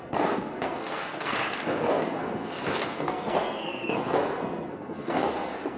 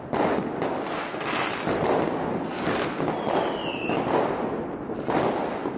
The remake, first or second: first